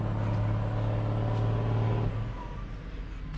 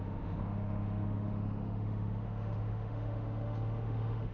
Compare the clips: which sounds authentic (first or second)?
first